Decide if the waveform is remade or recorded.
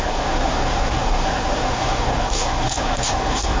remade